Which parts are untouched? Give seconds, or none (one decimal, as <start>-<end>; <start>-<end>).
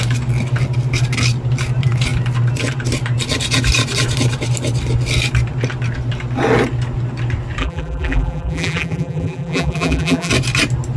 0.0-7.6; 10.3-11.0